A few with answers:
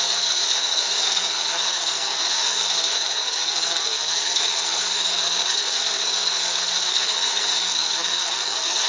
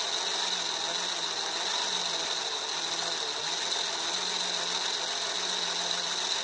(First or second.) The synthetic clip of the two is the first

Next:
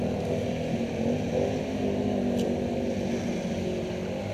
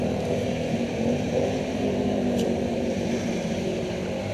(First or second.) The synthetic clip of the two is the second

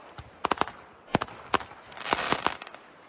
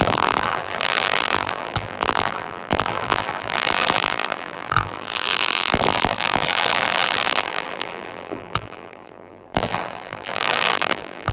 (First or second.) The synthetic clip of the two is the second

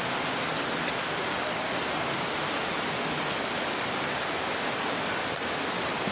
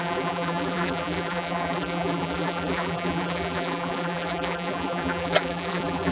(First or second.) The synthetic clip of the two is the second